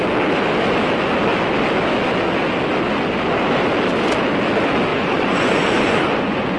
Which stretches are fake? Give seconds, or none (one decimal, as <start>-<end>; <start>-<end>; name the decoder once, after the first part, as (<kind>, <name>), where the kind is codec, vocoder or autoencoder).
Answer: 4.9-6.6 (vocoder, Vocos)